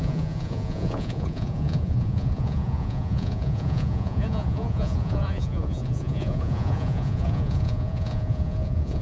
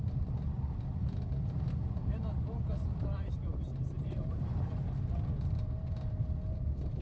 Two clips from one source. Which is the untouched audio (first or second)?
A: second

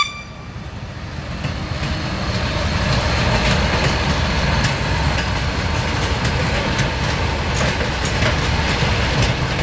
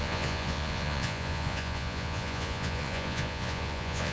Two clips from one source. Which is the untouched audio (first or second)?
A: first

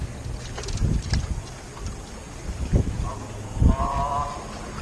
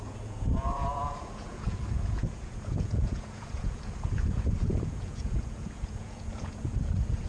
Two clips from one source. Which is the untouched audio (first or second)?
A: first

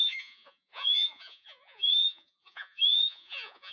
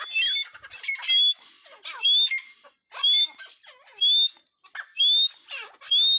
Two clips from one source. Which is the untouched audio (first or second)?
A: second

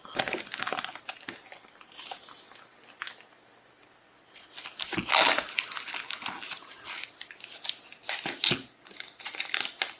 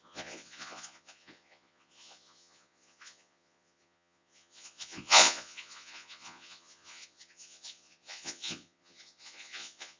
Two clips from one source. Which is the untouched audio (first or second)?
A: first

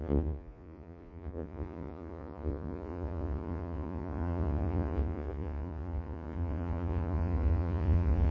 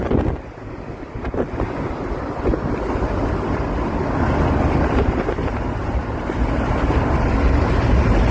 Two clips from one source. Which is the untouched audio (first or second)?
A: second